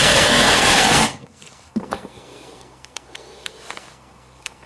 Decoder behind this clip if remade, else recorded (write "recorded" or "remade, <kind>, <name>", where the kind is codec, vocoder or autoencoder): remade, codec, SNAC